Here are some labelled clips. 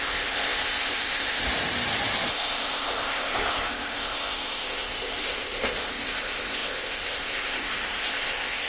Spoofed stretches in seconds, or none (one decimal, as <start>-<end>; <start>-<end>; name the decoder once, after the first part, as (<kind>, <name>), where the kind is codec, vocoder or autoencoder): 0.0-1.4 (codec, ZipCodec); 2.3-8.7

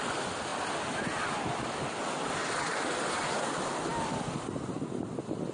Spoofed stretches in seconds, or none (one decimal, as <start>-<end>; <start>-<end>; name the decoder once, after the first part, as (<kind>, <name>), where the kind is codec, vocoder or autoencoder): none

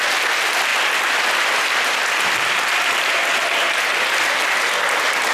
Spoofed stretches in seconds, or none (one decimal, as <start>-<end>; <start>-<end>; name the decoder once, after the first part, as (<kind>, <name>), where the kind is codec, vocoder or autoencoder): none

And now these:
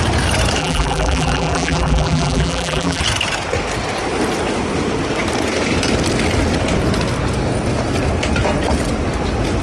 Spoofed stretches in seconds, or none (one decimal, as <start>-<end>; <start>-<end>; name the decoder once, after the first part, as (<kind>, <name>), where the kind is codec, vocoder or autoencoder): 0.6-3.0 (vocoder, BigVGAN v2)

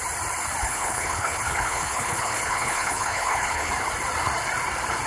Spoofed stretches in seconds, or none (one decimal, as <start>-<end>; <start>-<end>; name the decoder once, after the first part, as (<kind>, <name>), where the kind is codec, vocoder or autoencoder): 0.6-3.7 (codec, HILCodec)

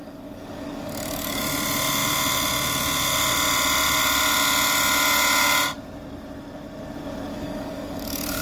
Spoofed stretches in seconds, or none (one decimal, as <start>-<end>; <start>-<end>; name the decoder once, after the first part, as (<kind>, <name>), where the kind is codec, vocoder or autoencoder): 0.0-1.4 (codec, DAC); 7.3-8.4

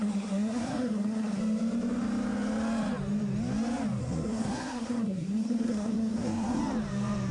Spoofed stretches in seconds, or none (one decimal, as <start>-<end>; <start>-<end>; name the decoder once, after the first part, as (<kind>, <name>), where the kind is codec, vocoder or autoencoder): 0.0-1.4 (codec, SNAC); 4.0-6.6